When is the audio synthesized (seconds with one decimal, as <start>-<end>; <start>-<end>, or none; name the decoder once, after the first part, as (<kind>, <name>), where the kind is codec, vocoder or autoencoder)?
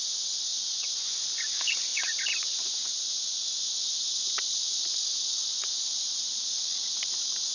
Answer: 0.5-1.1 (vocoder, Vocos); 1.9-4.4; 5.5-6.3